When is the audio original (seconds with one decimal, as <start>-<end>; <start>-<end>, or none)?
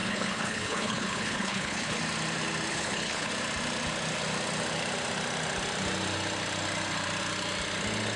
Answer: 2.0-2.7; 3.3-8.2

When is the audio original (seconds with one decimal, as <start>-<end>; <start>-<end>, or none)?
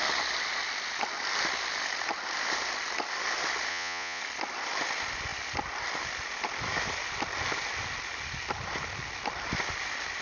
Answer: 0.0-3.7; 4.2-10.2